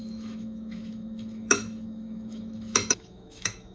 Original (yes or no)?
no